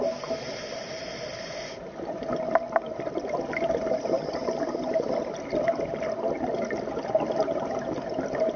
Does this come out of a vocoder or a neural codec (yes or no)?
no